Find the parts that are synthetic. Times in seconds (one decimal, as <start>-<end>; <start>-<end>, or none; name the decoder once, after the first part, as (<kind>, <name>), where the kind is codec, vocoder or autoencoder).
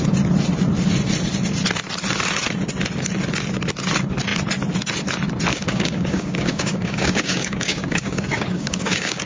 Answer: 5.5-9.3 (codec, DAC)